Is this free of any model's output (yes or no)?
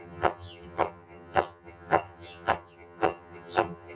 no